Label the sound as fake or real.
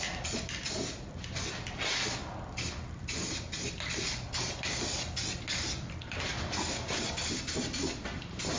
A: real